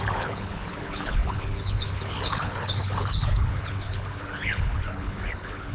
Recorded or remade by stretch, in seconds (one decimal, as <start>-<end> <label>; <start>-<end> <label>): 0.0-5.7 remade